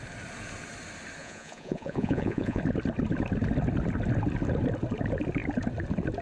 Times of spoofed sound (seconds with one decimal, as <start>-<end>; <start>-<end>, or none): 1.2-2.6